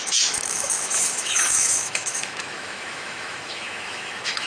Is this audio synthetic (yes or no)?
yes